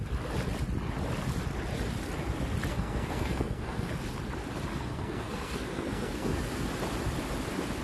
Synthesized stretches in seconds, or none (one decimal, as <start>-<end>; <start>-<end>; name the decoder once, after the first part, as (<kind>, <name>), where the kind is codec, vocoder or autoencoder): 2.7-3.9 (codec, SNAC); 4.7-6.5